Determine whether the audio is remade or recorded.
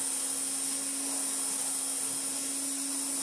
recorded